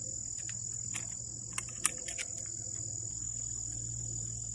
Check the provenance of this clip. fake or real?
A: real